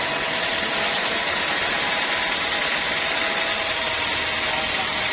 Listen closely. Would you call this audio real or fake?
real